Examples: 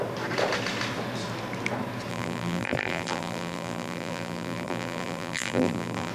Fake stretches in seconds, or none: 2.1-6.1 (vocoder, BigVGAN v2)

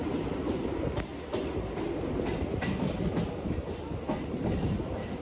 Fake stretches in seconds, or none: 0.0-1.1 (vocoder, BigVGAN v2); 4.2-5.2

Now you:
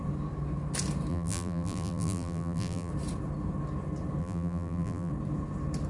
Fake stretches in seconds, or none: 1.1-2.9 (vocoder, BigVGAN v2); 4.2-5.1

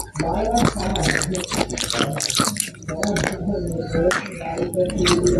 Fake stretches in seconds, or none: none

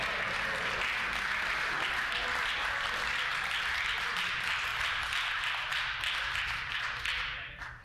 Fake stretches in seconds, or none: 0.0-3.3 (vocoder, BigVGAN v2); 4.1-7.8

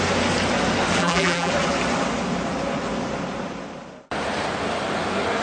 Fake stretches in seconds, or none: 1.0-1.5 (vocoder, BigVGAN v2)